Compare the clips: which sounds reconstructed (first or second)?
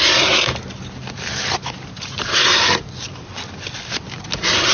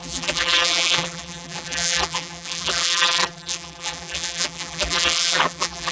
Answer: second